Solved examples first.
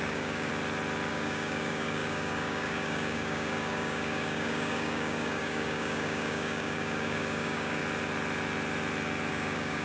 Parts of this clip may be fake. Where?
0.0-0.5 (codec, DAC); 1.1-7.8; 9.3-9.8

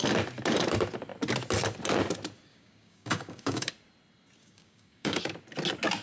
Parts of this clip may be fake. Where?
2.5-3.7 (codec, DAC); 4.4-5.2

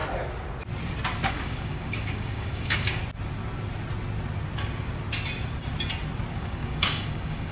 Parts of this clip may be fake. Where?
1.3-3.0 (codec, DAC); 6.3-7.5